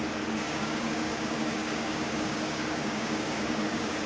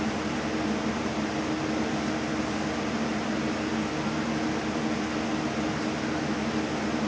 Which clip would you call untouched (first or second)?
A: second